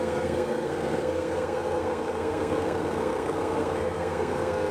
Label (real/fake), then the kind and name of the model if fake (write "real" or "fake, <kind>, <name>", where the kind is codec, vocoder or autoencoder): fake, codec, SNAC